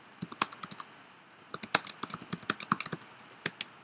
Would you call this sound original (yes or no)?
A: yes